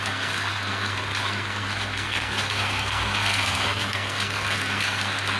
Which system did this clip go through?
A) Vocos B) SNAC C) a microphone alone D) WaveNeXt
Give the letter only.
B